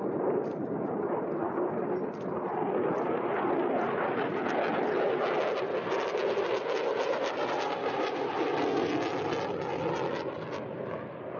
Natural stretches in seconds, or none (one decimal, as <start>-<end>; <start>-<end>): 0.0-11.4

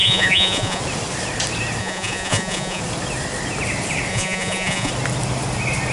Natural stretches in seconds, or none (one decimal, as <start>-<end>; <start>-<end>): 0.8-1.8; 2.8-4.1; 4.9-5.9

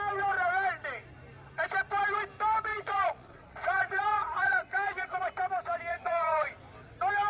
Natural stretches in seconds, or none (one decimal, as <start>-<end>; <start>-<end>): 0.0-2.7; 5.2-5.9; 6.5-7.3

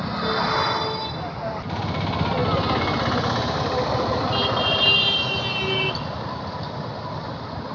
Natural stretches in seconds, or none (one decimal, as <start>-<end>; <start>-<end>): 0.0-7.7

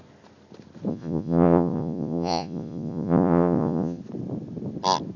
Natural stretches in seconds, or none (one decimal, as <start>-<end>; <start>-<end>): 0.0-0.9; 4.0-5.2

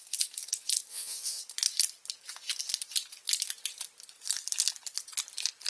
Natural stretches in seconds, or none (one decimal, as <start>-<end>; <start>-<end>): 0.0-0.9; 1.4-5.7

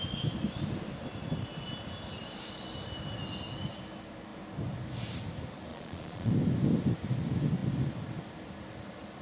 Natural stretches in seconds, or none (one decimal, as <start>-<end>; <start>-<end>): 0.0-5.7; 6.3-9.2

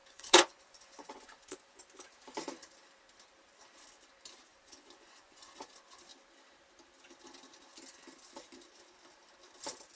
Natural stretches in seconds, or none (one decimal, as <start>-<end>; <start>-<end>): 1.8-4.5; 5.7-10.0